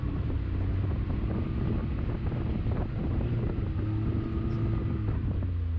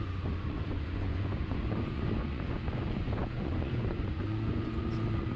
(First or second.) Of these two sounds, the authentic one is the first